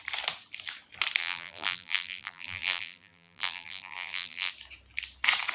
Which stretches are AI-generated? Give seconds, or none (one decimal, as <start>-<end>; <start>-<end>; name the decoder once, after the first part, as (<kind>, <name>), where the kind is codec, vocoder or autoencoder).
1.2-4.5 (vocoder, BigVGAN v2)